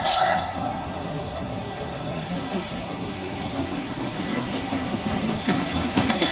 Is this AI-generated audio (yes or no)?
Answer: yes